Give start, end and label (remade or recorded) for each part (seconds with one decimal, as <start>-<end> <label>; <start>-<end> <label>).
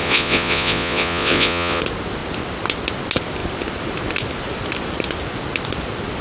0.0-1.8 remade; 1.8-6.2 recorded